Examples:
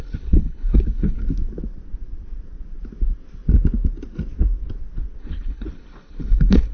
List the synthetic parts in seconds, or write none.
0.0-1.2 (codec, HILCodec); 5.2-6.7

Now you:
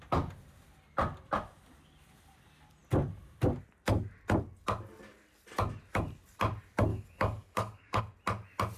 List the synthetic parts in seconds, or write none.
6.9-8.0 (codec, DAC)

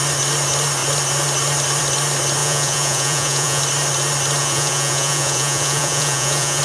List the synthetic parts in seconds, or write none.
2.4-3.6 (vocoder, Vocos); 4.4-6.6

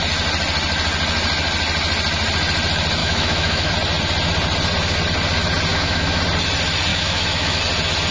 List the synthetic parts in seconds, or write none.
3.0-3.7 (autoencoder, DAC-VAE); 5.7-6.2; 6.9-7.6

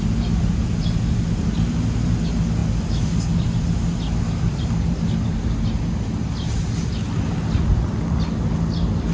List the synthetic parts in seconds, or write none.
none

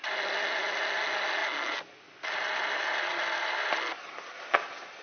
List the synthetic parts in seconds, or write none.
none